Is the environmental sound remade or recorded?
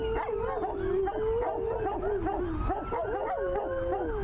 recorded